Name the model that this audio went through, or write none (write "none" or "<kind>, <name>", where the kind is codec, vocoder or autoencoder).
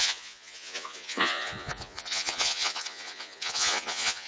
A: vocoder, Vocos